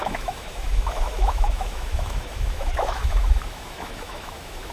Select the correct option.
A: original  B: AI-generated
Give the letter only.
B